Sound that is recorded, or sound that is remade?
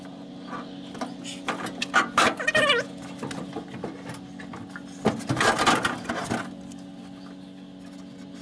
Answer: recorded